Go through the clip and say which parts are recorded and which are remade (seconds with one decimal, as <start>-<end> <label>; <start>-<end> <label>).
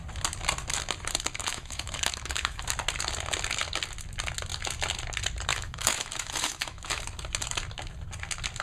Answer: 0.0-1.5 recorded; 1.5-2.6 remade; 2.6-5.5 recorded; 5.5-7.0 remade; 7.0-8.6 recorded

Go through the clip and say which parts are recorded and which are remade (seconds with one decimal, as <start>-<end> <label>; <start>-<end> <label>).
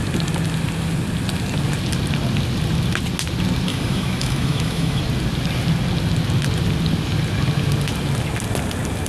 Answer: 0.0-3.7 recorded; 3.7-5.0 remade; 5.0-9.1 recorded